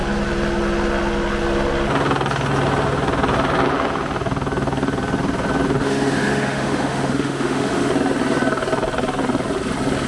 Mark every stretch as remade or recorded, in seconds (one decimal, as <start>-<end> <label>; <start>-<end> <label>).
0.0-5.8 recorded; 5.8-7.9 remade; 7.9-10.1 recorded